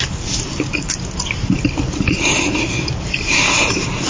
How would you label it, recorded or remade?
recorded